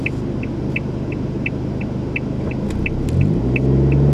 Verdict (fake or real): real